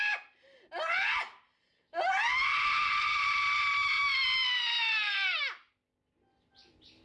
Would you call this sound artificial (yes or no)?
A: no